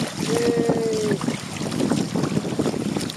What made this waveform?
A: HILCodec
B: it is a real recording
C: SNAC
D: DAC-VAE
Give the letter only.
B